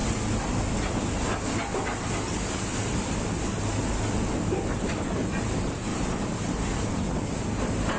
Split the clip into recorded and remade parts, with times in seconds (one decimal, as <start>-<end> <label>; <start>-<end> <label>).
0.0-4.4 recorded; 4.4-5.9 remade; 5.9-8.0 recorded